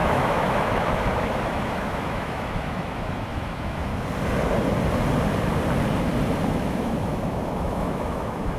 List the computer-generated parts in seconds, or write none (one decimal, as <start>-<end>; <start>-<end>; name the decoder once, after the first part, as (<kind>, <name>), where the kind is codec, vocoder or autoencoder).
0.0-3.9 (autoencoder, DAC-VAE); 6.5-8.6